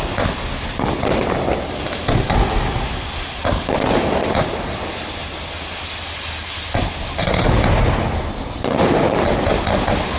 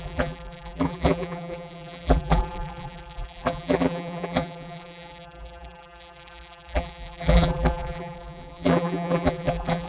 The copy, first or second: second